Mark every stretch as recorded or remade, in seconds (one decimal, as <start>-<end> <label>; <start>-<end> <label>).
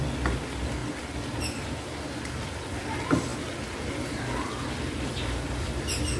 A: 0.0-6.2 recorded